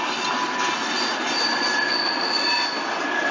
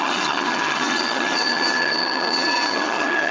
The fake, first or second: second